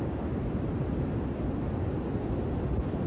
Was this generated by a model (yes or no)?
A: no